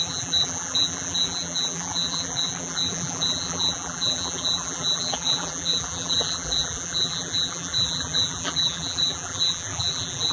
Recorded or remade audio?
remade